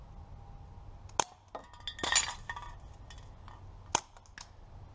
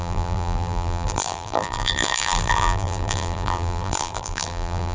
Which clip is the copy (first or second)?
second